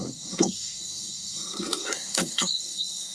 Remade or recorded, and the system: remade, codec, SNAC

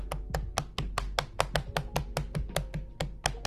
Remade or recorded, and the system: recorded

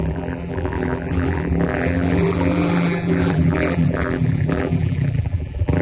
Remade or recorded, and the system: remade, vocoder, BigVGAN v2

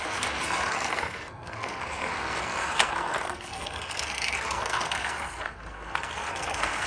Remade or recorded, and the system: remade, codec, SNAC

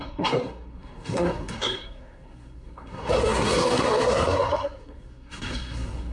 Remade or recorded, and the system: remade, codec, SNAC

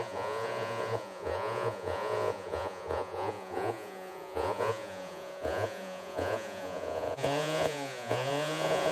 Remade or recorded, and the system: remade, vocoder, Vocos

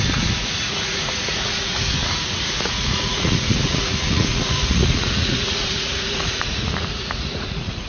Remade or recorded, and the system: remade, vocoder, Vocos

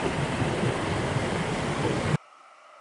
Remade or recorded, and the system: recorded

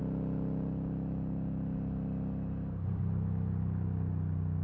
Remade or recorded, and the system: recorded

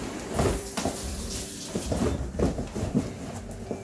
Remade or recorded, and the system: remade, vocoder, BigVGAN v2